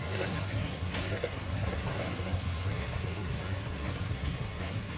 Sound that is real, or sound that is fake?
fake